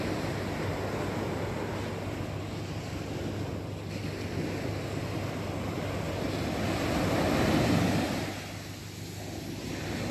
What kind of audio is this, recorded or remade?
recorded